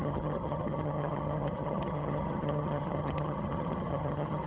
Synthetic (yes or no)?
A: yes